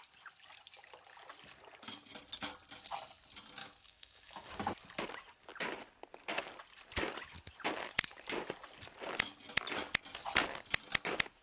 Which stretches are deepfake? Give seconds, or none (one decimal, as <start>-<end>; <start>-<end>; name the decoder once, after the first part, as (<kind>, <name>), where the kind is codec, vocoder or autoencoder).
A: 3.6-4.5 (autoencoder, DAC-VAE)